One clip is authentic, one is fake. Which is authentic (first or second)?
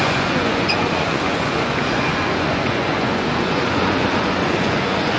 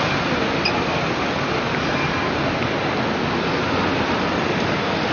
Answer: second